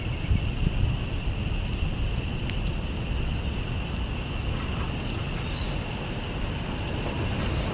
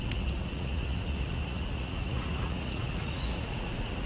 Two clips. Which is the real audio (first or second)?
first